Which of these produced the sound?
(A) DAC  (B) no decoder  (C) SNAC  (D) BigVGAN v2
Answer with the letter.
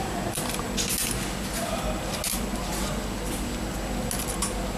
B